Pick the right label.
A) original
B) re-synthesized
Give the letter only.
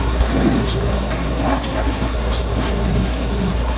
B